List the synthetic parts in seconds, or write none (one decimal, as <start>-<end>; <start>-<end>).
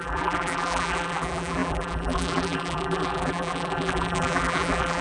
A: 0.0-5.0